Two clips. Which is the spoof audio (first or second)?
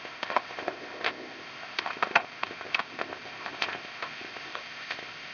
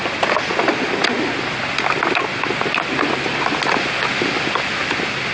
first